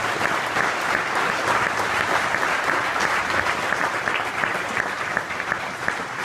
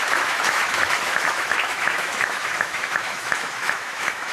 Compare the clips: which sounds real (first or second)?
first